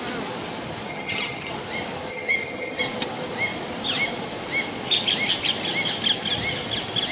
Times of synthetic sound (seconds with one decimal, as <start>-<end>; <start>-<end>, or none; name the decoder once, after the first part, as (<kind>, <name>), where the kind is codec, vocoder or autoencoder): 0.9-1.5 (vocoder, HiFi-GAN); 2.1-2.8